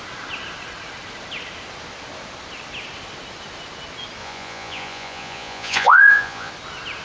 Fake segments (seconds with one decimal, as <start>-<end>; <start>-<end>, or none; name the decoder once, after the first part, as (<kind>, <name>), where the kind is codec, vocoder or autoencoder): 4.2-6.5 (vocoder, Vocos)